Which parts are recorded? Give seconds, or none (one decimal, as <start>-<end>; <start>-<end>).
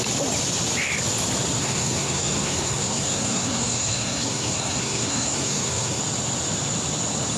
0.0-1.6; 6.0-7.4